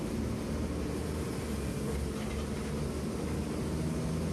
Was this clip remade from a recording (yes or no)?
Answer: no